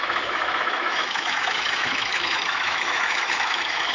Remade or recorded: remade